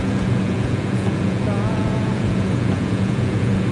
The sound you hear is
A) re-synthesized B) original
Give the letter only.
A